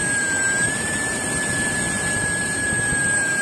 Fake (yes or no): yes